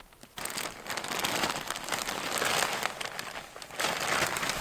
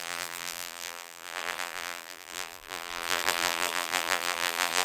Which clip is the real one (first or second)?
first